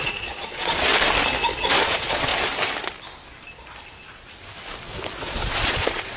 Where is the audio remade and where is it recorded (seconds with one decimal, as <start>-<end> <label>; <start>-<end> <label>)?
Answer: 0.0-0.9 remade; 0.9-1.7 recorded; 1.7-2.3 remade; 2.3-5.2 recorded; 5.2-6.2 remade